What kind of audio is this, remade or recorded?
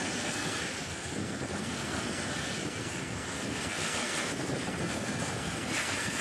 remade